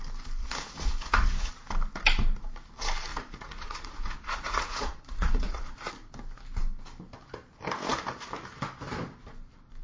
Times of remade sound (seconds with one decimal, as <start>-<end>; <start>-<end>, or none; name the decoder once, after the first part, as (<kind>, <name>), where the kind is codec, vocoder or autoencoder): 0.4-1.5 (vocoder, Vocos); 3.1-5.9